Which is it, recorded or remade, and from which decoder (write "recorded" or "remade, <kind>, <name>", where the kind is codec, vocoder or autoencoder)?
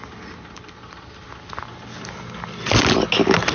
recorded